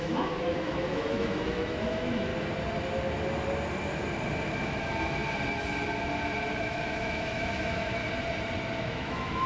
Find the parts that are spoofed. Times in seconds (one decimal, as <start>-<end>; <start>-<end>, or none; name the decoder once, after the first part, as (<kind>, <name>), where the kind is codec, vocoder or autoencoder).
0.0-2.3 (autoencoder, DAC-VAE); 4.6-5.2; 6.6-8.0; 8.8-9.5